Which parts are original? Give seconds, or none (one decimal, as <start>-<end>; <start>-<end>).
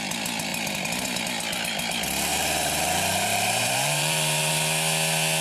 0.0-2.3; 4.5-5.4